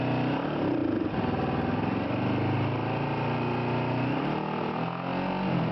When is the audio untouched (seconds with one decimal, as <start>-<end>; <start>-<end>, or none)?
0.0-5.7